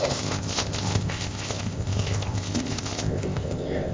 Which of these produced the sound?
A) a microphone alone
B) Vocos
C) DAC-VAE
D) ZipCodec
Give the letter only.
D